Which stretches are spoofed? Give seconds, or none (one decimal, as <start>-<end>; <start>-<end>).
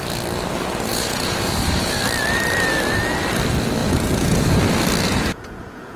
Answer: 0.9-2.0; 3.8-4.6; 5.1-6.0